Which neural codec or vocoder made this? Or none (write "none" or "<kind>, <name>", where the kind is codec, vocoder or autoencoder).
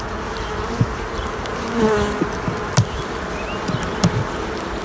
none